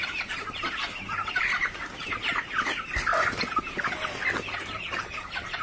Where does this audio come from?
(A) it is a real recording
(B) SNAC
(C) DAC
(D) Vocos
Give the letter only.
A